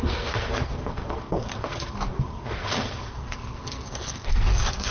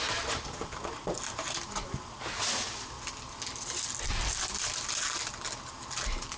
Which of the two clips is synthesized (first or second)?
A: first